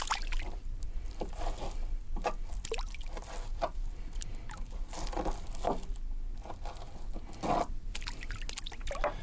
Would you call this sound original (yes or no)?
yes